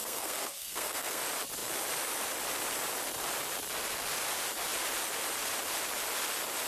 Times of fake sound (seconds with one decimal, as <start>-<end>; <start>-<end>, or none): 0.0-1.2